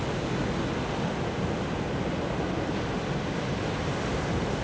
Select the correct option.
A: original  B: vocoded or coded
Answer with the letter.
A